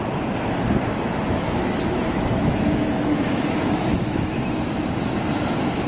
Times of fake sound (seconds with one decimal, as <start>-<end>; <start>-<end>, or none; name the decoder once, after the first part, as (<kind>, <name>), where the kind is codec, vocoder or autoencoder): 0.9-4.4 (autoencoder, DAC-VAE)